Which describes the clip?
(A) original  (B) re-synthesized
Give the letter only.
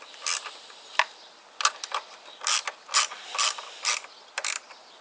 B